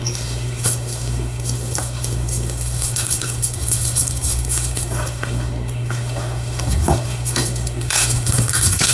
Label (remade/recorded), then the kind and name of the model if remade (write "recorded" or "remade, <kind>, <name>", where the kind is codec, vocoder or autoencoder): remade, codec, SNAC